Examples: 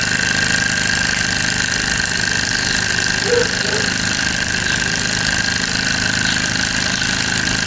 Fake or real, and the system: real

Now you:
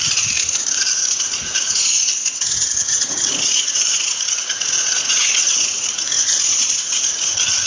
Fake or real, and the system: fake, vocoder, Vocos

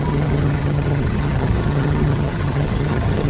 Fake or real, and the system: fake, vocoder, HiFi-GAN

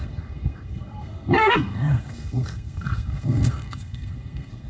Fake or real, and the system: fake, codec, SNAC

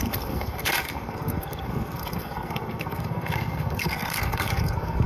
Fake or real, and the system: fake, codec, SNAC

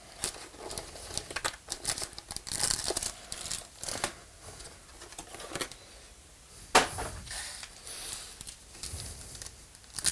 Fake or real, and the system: real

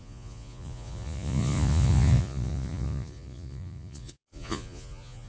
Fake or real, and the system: fake, vocoder, Vocos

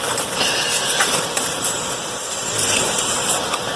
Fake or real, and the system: fake, vocoder, BigVGAN v2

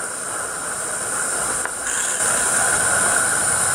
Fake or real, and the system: real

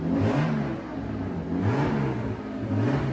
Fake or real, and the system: real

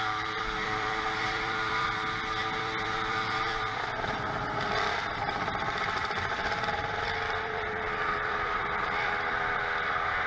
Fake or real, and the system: fake, vocoder, BigVGAN v2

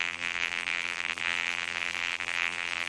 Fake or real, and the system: fake, vocoder, BigVGAN v2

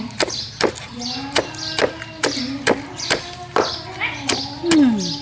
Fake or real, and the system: real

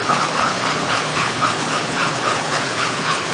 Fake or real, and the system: fake, codec, HILCodec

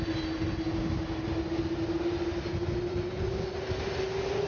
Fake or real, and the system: real